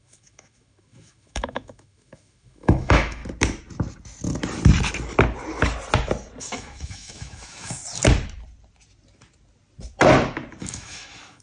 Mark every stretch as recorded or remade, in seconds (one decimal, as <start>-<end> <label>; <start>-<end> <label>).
0.0-3.2 remade; 3.2-6.4 recorded; 6.4-7.8 remade; 7.8-10.6 recorded; 10.6-11.4 remade